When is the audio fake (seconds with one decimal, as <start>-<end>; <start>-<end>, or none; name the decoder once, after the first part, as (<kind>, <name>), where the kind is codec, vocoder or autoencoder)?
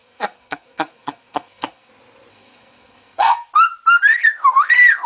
0.0-1.9 (codec, SNAC); 2.3-3.5